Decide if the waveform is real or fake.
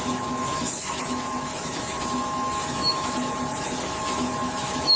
fake